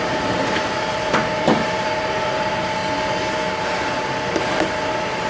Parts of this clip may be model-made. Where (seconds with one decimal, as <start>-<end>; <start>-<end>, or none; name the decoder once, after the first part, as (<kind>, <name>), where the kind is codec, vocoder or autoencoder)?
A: 0.0-2.8 (vocoder, BigVGAN v2); 3.6-5.3